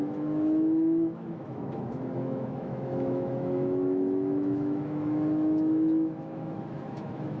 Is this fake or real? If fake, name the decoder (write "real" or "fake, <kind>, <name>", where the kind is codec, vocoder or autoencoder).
fake, autoencoder, DAC-VAE